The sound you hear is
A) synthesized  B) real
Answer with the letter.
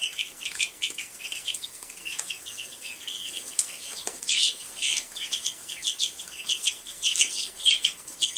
A